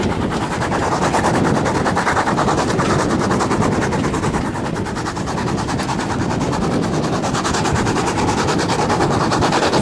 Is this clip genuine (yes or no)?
yes